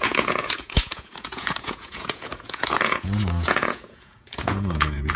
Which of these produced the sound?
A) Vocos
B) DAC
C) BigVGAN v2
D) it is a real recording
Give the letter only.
A